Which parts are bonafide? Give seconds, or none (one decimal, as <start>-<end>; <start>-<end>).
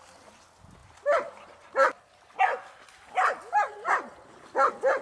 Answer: 0.0-5.0